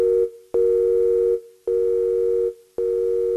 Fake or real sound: real